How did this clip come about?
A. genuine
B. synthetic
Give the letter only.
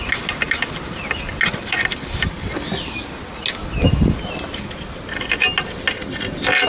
A